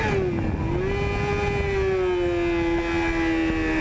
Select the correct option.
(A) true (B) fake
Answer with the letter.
A